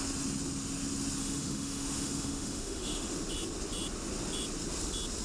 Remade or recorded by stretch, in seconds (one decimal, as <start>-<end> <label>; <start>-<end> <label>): 0.0-1.2 recorded; 1.2-3.1 remade; 3.1-5.2 recorded